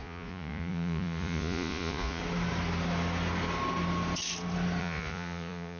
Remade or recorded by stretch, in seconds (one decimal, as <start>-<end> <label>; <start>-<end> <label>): 0.0-2.2 remade; 2.2-4.8 recorded; 4.8-5.8 remade